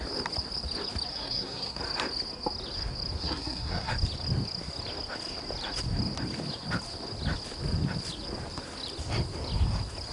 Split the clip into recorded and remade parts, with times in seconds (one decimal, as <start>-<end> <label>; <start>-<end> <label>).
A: 0.0-1.1 recorded; 1.1-1.8 remade; 1.8-3.2 recorded; 3.2-3.9 remade; 3.9-10.1 recorded

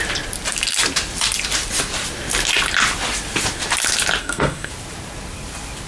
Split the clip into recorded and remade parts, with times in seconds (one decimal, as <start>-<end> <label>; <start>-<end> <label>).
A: 0.0-4.2 recorded; 4.2-4.7 remade; 4.7-5.9 recorded

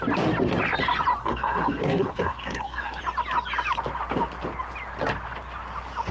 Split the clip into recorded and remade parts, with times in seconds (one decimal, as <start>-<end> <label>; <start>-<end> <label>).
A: 0.0-1.2 recorded; 1.2-3.0 remade; 3.0-6.1 recorded

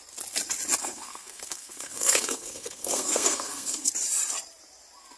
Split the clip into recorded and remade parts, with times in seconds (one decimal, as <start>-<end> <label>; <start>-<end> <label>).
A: 0.0-0.8 recorded; 0.8-3.9 remade; 3.9-5.2 recorded

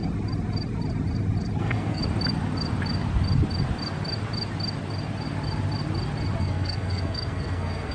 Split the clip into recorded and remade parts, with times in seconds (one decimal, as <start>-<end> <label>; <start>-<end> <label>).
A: 0.0-1.6 recorded; 1.6-2.0 remade; 2.0-6.4 recorded; 6.4-7.9 remade

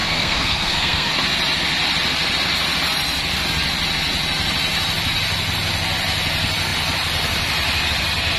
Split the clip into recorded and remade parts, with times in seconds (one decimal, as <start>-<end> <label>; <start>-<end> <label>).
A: 0.0-1.1 remade; 1.1-8.4 recorded

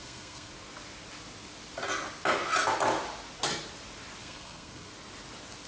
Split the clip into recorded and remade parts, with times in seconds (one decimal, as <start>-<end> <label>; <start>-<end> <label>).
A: 0.0-0.5 remade; 0.5-4.2 recorded; 4.2-4.9 remade; 4.9-5.7 recorded